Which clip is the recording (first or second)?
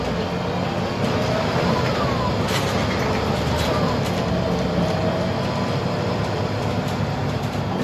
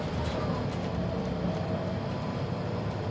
first